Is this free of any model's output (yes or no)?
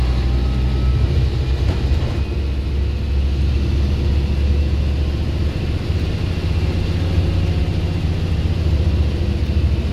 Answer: yes